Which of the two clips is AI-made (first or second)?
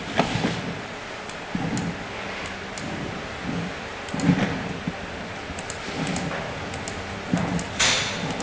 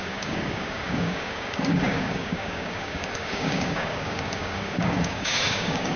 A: second